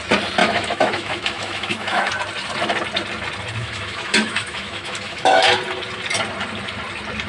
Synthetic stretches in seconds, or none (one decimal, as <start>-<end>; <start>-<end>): 0.4-2.1; 3.6-5.5